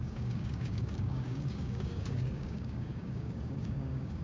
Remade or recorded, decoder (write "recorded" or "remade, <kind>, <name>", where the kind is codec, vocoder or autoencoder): remade, codec, DAC